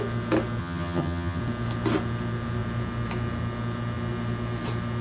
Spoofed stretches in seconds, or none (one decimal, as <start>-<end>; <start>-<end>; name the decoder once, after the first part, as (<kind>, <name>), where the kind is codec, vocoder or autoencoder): 0.6-1.4 (vocoder, HiFi-GAN)